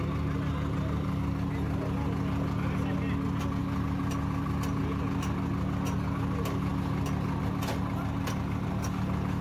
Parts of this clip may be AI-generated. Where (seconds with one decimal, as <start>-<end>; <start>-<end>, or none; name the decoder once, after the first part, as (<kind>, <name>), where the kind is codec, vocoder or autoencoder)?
none